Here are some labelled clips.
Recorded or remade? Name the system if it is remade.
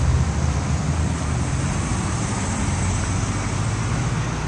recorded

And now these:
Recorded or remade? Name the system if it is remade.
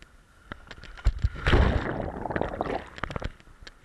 recorded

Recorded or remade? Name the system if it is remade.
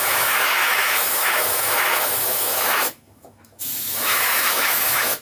remade, autoencoder, DAC-VAE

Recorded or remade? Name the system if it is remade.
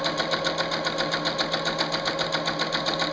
recorded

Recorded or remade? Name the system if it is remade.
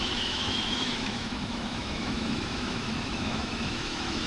remade, autoencoder, DAC-VAE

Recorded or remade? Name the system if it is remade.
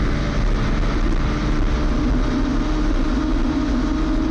recorded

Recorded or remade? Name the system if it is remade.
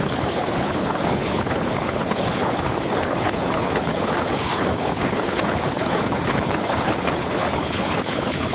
remade, codec, HILCodec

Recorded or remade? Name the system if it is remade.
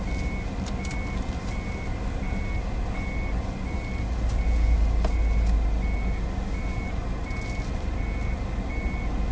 recorded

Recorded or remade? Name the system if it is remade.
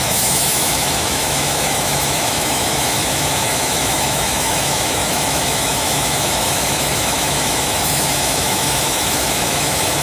remade, autoencoder, DAC-VAE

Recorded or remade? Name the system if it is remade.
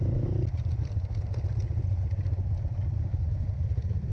recorded